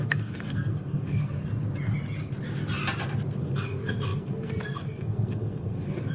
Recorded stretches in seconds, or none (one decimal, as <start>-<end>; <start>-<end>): 1.5-3.4